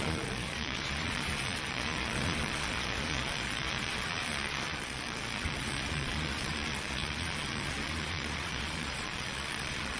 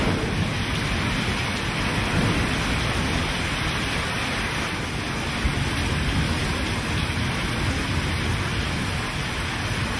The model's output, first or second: first